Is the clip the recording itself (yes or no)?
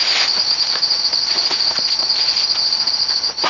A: yes